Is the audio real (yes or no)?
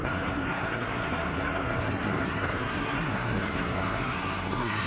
no